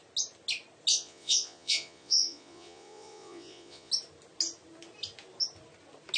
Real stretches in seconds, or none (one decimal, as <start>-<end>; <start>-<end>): 0.0-0.9; 3.9-6.2